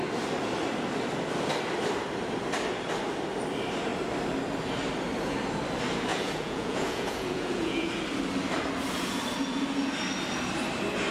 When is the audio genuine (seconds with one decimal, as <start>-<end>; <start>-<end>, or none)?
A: 0.0-6.1; 7.9-11.1